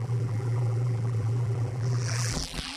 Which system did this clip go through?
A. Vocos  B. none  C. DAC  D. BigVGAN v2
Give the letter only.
D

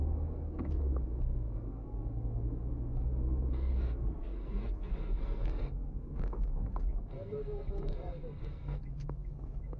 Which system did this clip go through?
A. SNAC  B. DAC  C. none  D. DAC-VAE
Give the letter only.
A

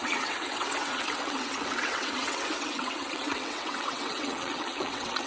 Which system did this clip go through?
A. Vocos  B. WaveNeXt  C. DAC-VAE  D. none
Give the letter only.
B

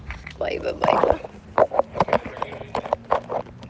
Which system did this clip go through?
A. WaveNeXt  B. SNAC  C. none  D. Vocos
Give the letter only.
C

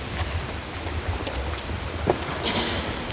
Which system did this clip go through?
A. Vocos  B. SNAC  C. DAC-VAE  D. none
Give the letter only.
D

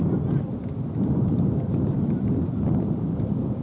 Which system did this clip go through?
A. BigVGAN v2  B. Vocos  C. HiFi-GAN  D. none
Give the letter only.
D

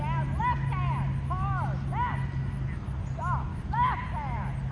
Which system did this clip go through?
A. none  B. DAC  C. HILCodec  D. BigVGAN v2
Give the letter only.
A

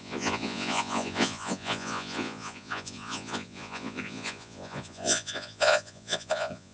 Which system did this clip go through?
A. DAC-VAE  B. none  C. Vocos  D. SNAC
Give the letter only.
C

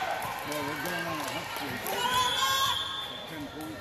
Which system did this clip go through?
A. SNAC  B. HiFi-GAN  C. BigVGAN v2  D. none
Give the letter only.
D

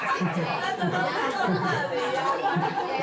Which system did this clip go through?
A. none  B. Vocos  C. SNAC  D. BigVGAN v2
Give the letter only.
A